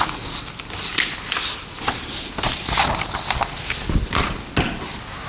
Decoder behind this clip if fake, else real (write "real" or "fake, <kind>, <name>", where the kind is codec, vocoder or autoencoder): real